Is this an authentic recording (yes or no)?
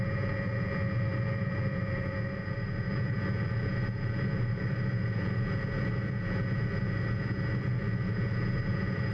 no